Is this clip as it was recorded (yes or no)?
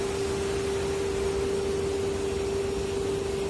yes